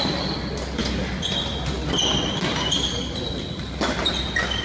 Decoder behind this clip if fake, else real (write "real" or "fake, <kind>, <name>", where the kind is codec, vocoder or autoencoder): real